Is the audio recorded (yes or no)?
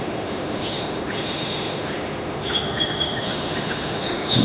no